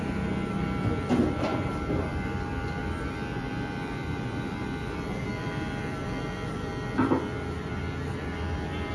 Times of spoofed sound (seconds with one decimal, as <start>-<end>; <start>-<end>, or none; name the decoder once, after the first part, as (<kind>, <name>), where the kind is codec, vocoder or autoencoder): 0.0-6.7 (vocoder, BigVGAN v2); 8.1-8.9